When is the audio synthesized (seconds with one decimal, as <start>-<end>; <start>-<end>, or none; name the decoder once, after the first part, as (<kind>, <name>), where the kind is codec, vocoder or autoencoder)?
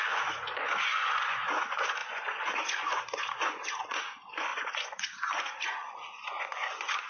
0.0-7.1 (vocoder, Vocos)